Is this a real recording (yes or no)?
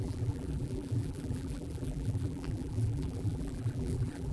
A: no